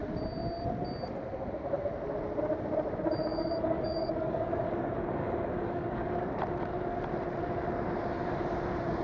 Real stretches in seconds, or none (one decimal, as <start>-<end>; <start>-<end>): 0.0-3.2; 6.4-9.0